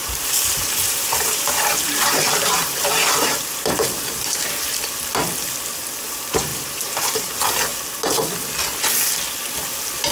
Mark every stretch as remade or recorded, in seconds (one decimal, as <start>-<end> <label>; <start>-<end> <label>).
0.0-4.4 remade; 4.4-6.5 recorded; 6.5-7.3 remade; 7.3-10.1 recorded